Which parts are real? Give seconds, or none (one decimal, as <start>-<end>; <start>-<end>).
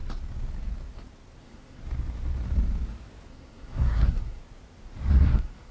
0.0-1.4; 1.8-3.3; 4.4-5.1